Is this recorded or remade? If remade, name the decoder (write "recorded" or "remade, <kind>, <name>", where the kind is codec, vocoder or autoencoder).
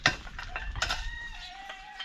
remade, vocoder, BigVGAN v2